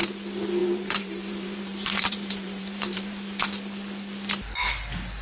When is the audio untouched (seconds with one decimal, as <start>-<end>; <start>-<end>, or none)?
0.0-0.6; 3.4-5.2

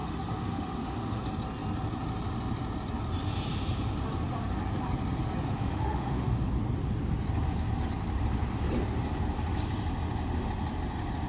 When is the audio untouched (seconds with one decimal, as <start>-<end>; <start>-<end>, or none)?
1.2-5.5; 6.5-11.3

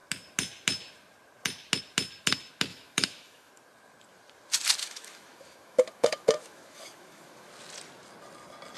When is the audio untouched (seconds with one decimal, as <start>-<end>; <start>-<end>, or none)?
0.0-2.7; 3.5-4.8; 7.5-8.8